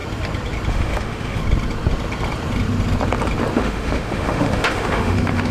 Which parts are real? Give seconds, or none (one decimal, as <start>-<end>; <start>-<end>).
0.0-0.7; 1.4-3.5